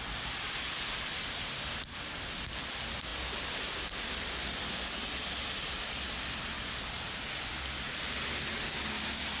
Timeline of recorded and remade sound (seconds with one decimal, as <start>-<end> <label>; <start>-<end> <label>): 0.0-9.4 recorded